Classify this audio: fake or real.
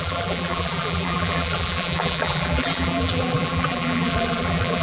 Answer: fake